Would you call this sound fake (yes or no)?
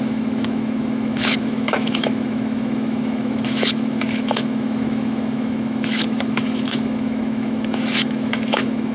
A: yes